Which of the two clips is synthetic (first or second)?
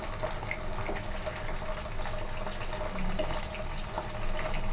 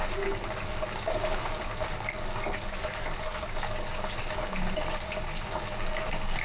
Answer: second